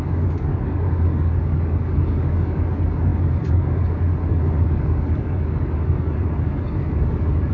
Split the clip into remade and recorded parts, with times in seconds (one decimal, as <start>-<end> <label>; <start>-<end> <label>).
0.0-7.5 remade